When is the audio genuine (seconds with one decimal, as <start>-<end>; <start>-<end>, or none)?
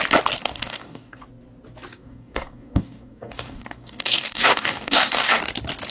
0.0-0.4; 1.2-1.9; 5.4-5.9